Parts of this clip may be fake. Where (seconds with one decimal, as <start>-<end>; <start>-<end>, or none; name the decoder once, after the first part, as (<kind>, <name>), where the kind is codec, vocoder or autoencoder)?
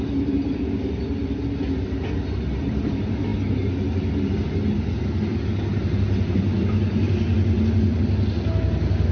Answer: none